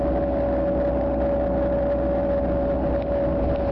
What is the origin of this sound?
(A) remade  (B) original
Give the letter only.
B